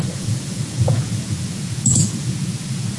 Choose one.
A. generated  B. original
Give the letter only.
A